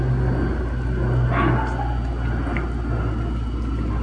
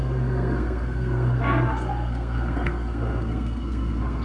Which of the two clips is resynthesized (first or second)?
second